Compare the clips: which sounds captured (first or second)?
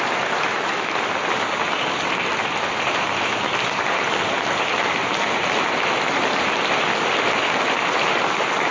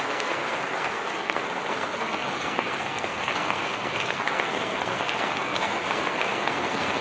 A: first